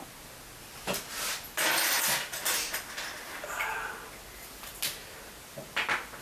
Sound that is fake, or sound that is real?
real